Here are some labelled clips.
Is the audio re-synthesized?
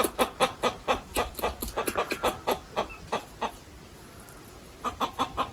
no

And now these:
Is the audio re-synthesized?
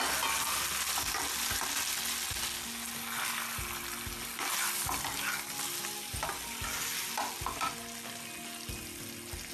no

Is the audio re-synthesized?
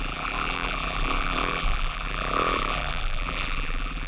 yes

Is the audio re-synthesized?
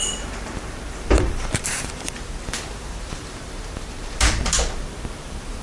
yes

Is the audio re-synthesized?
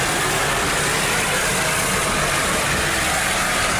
no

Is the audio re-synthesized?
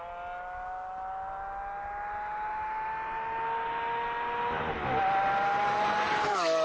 no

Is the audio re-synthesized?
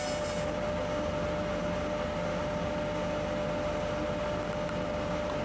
no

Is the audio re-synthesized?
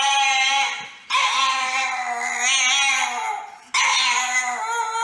no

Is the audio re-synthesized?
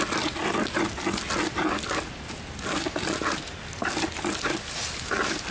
no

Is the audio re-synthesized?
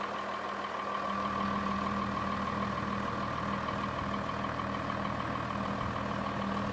no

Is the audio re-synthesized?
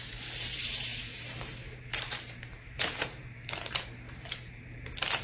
yes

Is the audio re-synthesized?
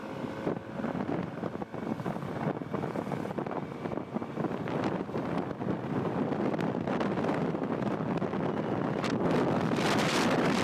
no